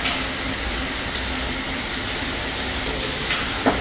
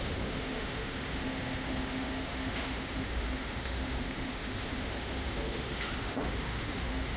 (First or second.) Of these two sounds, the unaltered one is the first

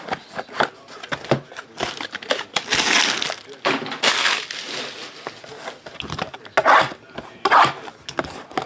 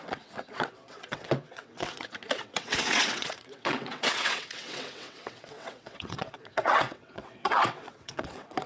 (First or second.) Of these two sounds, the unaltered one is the first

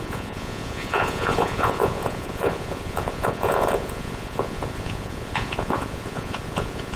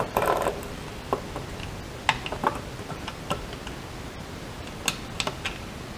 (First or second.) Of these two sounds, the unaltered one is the second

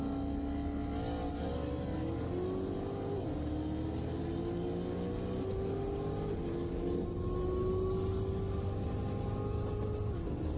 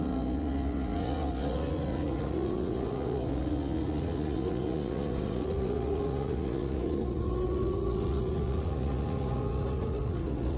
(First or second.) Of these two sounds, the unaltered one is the first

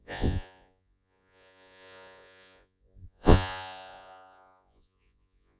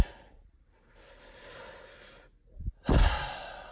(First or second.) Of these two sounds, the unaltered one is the second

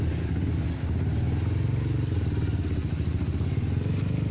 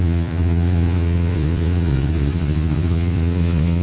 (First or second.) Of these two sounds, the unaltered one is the first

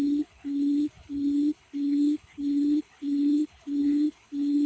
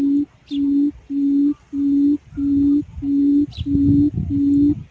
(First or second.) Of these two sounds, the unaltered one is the second